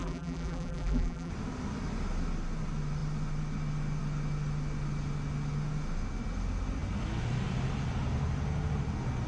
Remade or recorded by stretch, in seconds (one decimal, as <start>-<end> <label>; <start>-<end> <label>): 0.0-1.3 remade; 1.3-9.3 recorded